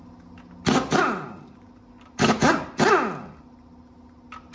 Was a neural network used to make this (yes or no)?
no